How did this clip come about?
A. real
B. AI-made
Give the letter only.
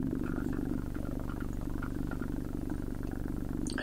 A